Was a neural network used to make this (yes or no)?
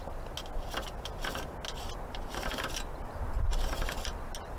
no